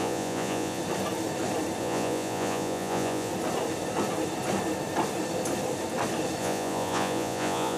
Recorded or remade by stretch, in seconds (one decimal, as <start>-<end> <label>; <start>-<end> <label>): 0.0-0.8 remade; 0.8-1.8 recorded; 1.8-3.3 remade; 3.3-6.4 recorded; 6.4-7.8 remade